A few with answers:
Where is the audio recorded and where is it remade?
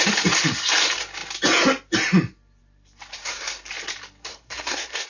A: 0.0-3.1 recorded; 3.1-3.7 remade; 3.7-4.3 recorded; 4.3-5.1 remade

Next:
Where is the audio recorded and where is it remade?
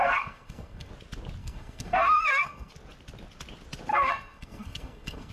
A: 0.0-0.9 remade; 0.9-1.4 recorded; 1.4-2.7 remade; 2.7-3.9 recorded; 3.9-5.3 remade